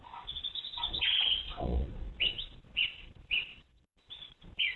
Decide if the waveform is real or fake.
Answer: fake